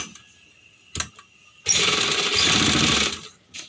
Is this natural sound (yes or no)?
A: yes